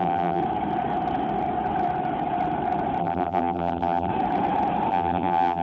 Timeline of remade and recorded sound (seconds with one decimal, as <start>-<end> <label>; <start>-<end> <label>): 0.0-0.4 remade; 0.4-3.0 recorded; 3.0-4.1 remade; 4.1-4.9 recorded; 4.9-5.6 remade